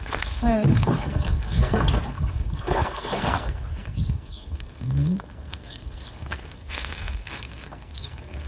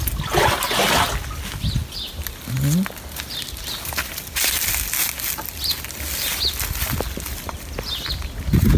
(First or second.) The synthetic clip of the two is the first